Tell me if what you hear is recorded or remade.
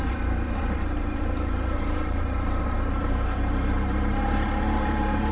remade